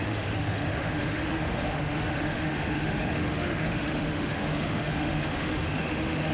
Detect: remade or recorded remade